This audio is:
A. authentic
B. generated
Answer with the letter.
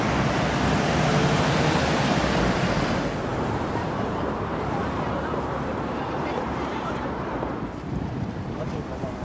B